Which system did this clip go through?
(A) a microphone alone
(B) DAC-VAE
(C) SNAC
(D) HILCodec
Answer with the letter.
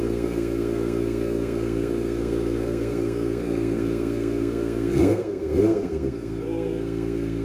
C